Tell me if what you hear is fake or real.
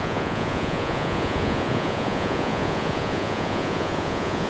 fake